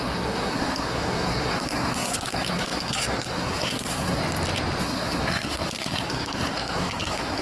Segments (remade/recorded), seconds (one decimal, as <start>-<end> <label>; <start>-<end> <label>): 0.0-4.2 remade; 4.2-4.8 recorded; 4.8-7.4 remade